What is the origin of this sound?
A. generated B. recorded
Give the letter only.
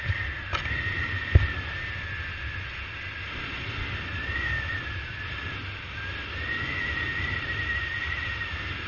B